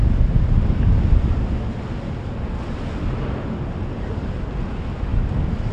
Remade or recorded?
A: recorded